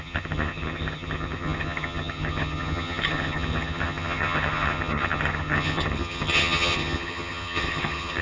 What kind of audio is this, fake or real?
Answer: fake